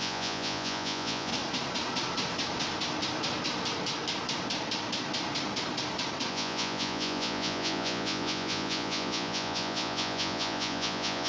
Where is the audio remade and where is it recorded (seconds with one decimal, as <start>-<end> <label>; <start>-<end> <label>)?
0.0-1.3 remade; 1.3-6.3 recorded; 6.3-11.3 remade